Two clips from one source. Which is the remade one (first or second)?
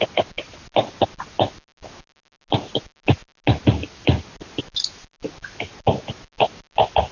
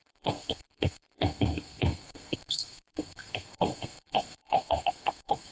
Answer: second